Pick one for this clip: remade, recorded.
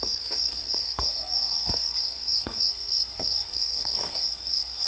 remade